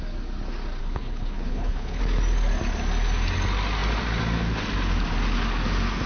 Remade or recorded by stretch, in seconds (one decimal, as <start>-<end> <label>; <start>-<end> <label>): 0.0-0.8 recorded; 0.8-2.0 remade; 2.0-6.1 recorded